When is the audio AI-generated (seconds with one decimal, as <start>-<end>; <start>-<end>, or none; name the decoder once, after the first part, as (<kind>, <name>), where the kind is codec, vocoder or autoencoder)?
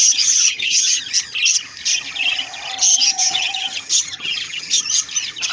0.0-1.0 (vocoder, HiFi-GAN); 2.9-4.8